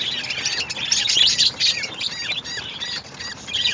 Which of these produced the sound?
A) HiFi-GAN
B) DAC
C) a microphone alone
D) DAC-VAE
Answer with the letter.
C